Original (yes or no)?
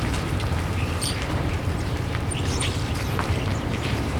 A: no